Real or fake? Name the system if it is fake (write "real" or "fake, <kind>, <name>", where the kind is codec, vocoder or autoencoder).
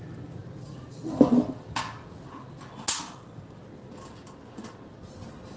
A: real